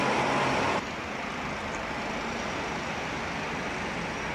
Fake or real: real